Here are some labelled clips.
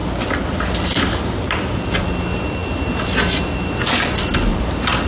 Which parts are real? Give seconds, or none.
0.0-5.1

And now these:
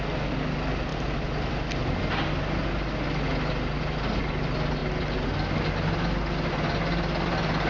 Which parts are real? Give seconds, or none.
0.0-7.7

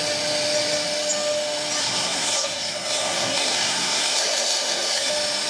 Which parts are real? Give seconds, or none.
0.0-1.8; 5.1-5.5

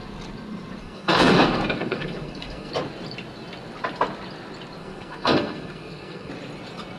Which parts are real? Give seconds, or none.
0.0-0.8; 2.7-4.8; 6.3-7.0

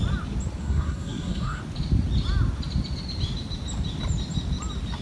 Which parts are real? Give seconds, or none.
0.0-0.6; 1.6-5.0

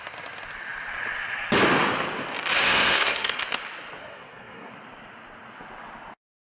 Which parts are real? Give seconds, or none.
0.0-2.6; 3.4-4.0; 4.7-6.5